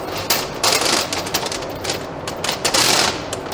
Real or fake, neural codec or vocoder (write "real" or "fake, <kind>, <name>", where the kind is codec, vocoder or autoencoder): fake, vocoder, BigVGAN v2